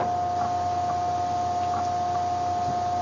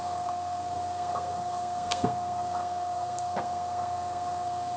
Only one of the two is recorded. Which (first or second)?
first